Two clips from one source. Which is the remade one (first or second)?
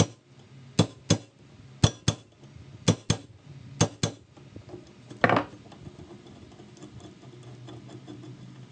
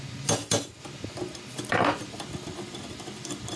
second